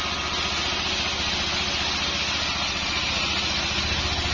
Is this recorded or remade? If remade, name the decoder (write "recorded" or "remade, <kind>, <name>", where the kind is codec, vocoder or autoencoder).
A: recorded